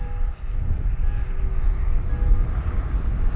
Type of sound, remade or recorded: recorded